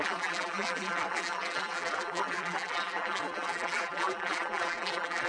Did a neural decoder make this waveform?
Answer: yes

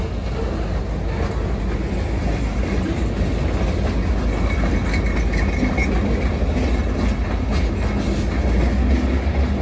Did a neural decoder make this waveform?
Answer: no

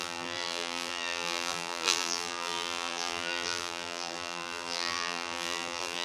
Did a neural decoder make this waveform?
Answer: yes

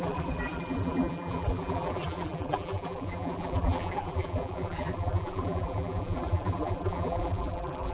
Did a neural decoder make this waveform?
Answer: yes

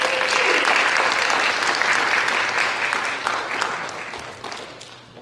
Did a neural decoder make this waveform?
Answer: no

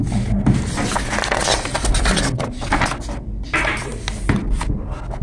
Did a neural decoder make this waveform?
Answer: no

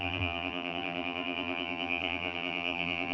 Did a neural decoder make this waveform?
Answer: yes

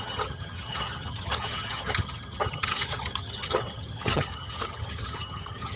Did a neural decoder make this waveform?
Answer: yes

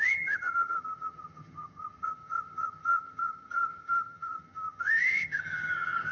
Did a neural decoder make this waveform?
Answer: yes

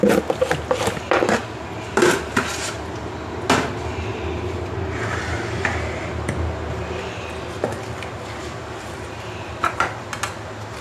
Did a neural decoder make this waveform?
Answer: no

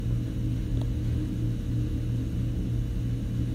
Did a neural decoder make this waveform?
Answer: no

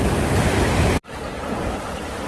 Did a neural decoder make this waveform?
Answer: no